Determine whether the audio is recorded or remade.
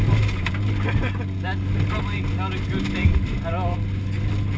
recorded